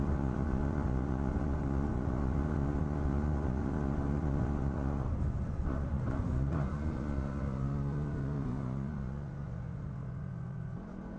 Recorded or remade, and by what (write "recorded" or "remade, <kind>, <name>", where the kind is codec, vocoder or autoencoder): remade, vocoder, Vocos